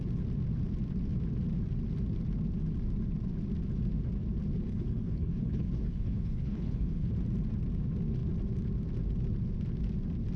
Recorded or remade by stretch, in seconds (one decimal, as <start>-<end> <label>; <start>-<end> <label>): 0.0-4.7 recorded; 4.7-7.1 remade; 7.1-10.4 recorded